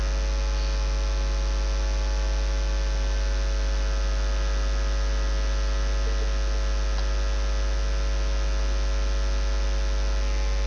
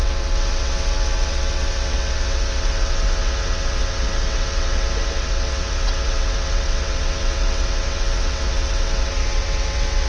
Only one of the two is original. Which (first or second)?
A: first